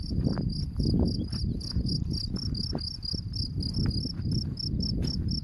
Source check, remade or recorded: recorded